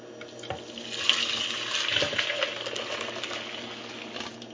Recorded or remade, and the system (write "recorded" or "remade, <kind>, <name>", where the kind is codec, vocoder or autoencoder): recorded